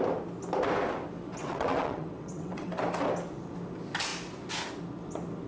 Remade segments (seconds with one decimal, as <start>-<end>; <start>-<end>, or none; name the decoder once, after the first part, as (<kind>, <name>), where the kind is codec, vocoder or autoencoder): 1.4-2.7 (vocoder, WaveNeXt)